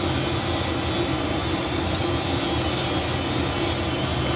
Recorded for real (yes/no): yes